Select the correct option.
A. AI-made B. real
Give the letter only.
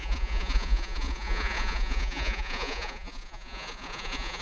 A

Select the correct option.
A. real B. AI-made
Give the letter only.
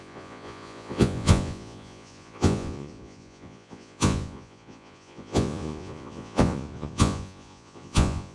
B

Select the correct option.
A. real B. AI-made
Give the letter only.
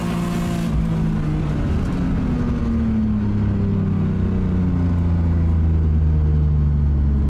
A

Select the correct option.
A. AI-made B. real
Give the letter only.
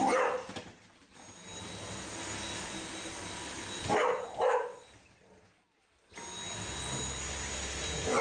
B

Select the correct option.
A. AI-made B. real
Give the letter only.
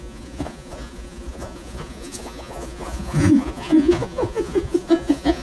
A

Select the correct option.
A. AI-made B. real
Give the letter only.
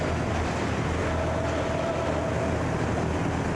B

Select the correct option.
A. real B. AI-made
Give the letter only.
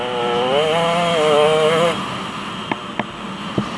A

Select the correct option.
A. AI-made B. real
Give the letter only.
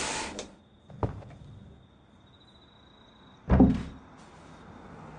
B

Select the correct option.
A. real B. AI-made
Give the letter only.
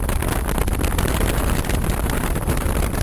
A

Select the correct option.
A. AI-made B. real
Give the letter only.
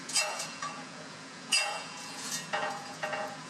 A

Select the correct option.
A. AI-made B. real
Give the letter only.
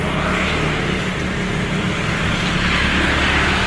B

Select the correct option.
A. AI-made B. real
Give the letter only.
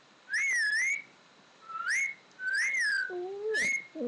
B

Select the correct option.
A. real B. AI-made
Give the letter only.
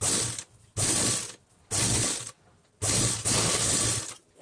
A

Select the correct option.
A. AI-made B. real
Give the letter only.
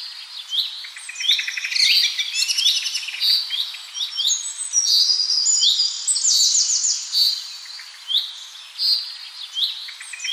B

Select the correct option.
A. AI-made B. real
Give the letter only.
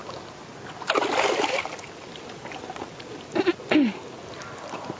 B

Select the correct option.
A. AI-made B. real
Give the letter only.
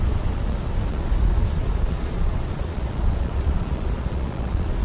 A